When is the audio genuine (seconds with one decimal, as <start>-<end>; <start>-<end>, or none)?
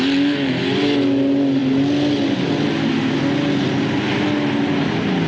0.0-5.3